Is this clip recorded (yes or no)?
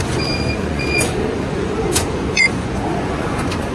no